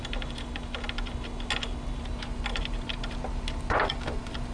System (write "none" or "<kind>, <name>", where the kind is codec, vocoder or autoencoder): none